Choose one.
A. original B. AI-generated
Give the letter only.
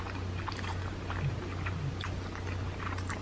A